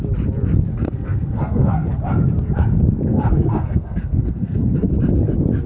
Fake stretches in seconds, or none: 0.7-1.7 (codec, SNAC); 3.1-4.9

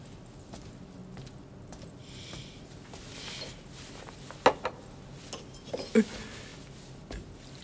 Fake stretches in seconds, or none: none

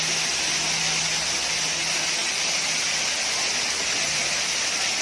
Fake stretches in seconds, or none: none

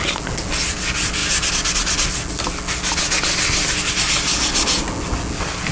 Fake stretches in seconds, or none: none

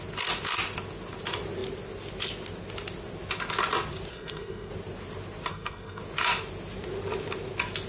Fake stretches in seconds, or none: 4.1-4.7 (codec, SNAC); 5.5-6.0

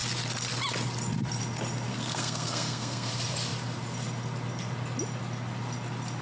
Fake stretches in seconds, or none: 1.9-3.1 (codec, SNAC)